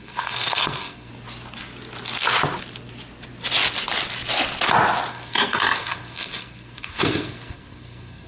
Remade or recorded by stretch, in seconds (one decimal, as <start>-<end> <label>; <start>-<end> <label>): 0.0-1.1 remade; 1.1-5.1 recorded; 5.1-8.3 remade